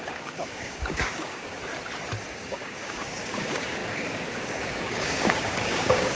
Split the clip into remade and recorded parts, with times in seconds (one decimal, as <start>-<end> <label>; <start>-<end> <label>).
0.0-1.6 remade; 1.6-2.3 recorded; 2.3-6.1 remade